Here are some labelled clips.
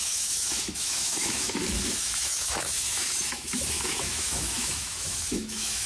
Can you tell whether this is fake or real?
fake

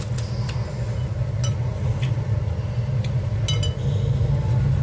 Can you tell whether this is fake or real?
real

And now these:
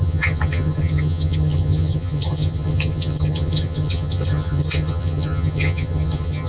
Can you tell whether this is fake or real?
fake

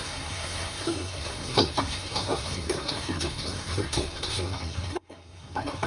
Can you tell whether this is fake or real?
fake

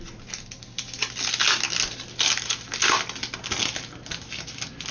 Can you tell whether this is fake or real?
real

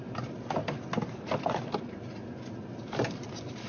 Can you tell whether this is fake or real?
real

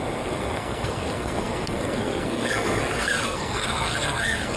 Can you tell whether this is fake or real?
fake